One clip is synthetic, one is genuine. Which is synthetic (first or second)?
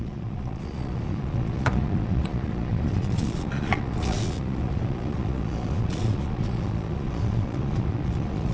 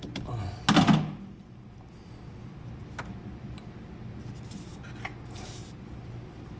first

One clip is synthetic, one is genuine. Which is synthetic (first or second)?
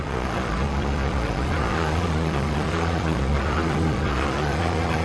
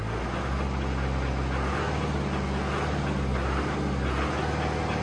first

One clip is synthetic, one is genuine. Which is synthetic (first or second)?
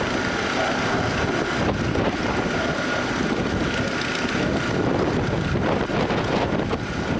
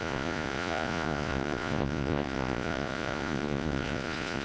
second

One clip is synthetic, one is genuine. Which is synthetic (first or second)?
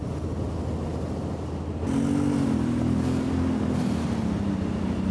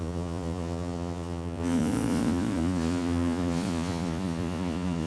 second